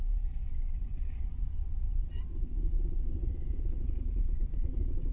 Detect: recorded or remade remade